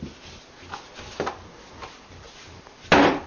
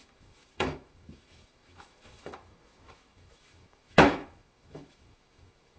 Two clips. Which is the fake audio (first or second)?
second